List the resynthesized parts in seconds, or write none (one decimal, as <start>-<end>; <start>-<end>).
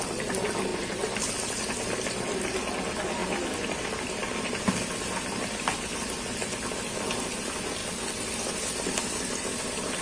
7.8-10.0